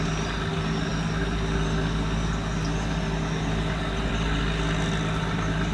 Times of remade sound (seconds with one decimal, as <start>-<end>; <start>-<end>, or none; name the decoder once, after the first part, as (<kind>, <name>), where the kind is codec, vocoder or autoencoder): none